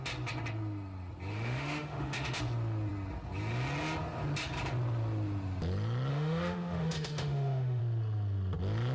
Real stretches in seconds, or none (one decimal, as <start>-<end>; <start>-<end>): 0.0-1.3; 2.4-6.1; 7.8-8.9